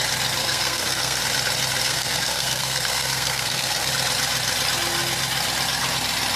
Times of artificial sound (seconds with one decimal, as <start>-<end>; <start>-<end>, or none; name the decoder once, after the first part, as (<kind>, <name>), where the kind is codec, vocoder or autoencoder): 0.4-1.2 (codec, SNAC); 1.8-3.9